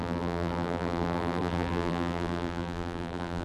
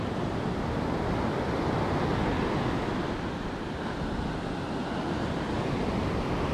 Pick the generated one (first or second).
first